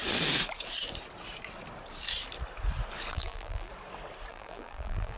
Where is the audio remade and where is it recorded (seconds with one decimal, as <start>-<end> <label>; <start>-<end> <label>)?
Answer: 0.0-3.1 recorded; 3.1-3.7 remade; 3.7-4.3 recorded; 4.3-5.2 remade